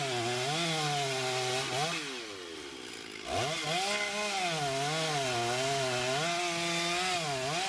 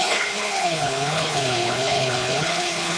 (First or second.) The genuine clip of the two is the first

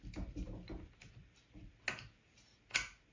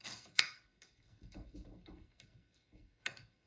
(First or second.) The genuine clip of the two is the first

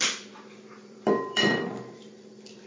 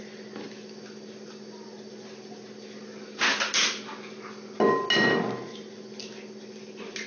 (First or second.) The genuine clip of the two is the second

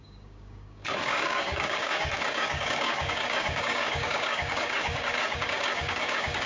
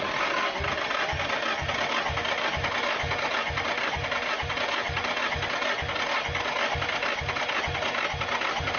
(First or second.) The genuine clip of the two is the second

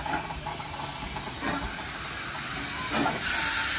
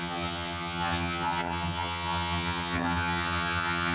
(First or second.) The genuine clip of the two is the first